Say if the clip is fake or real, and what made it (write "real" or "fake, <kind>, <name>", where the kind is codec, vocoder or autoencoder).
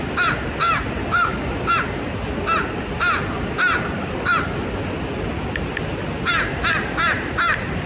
real